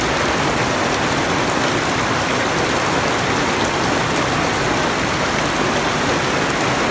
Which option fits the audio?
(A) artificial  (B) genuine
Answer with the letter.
B